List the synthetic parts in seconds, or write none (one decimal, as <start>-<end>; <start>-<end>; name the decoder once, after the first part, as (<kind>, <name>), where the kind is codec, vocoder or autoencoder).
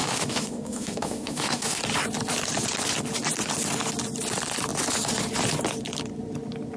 0.0-1.8 (autoencoder, DAC-VAE)